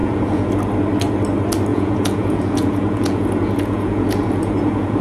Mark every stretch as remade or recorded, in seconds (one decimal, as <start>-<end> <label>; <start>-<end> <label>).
0.0-0.5 remade; 0.5-1.7 recorded; 1.7-5.0 remade